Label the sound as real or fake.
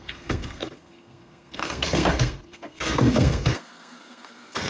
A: fake